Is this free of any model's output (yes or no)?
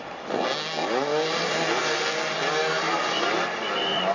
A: yes